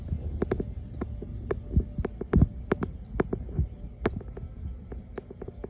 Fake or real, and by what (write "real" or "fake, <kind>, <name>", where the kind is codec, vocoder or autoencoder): real